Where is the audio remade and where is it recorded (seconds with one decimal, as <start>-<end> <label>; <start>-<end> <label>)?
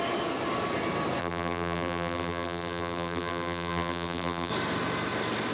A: 0.0-1.2 recorded; 1.2-4.5 remade; 4.5-5.5 recorded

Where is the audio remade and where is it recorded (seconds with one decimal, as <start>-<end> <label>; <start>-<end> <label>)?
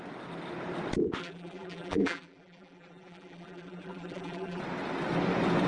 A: 0.0-1.2 recorded; 1.2-4.6 remade; 4.6-5.7 recorded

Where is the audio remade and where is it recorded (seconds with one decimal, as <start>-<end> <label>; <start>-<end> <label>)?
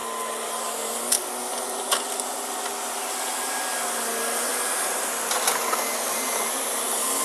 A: 0.0-1.1 remade; 1.1-7.2 recorded